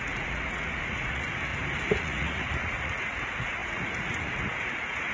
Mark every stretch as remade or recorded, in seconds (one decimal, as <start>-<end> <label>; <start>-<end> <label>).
0.0-1.5 remade; 1.5-2.0 recorded; 2.0-5.1 remade